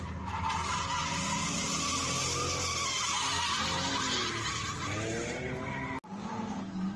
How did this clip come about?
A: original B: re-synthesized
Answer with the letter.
A